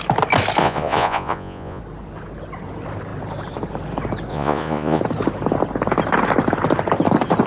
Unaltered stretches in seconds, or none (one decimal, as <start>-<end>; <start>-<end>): 0.0-0.6; 1.8-4.3; 5.0-7.5